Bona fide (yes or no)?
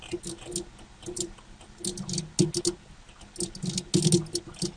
yes